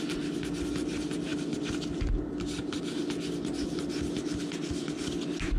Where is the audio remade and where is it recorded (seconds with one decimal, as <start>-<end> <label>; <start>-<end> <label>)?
0.0-5.6 recorded